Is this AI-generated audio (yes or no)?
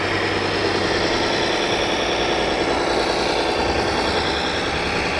no